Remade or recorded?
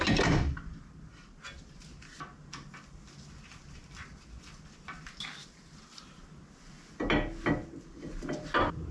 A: recorded